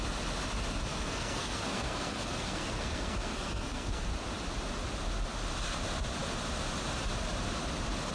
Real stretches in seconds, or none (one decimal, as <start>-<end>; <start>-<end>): 0.0-0.9; 4.1-8.1